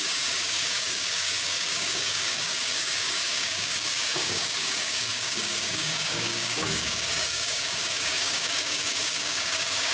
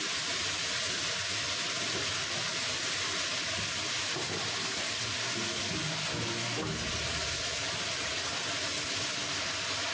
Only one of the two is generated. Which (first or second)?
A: first